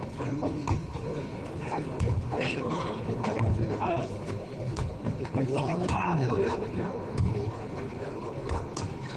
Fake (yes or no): yes